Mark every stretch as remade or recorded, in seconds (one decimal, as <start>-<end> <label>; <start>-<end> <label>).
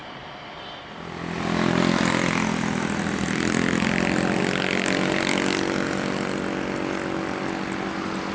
0.0-4.4 remade; 4.4-8.3 recorded